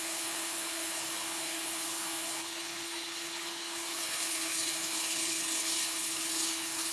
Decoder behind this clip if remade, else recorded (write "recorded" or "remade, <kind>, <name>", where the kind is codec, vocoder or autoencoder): remade, codec, HILCodec